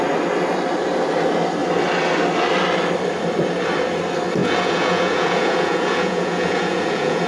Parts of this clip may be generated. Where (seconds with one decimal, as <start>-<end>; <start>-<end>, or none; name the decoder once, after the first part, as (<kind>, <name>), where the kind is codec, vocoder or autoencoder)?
4.4-7.3 (vocoder, Vocos)